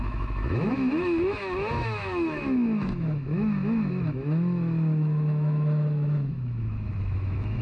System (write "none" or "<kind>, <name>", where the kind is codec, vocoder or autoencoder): autoencoder, DAC-VAE